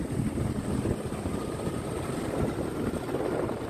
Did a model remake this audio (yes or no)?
yes